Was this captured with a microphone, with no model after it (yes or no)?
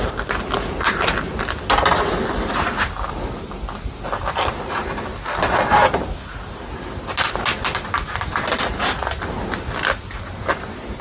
yes